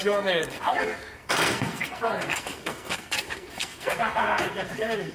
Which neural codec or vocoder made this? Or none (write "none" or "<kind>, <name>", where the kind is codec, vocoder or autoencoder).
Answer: codec, SNAC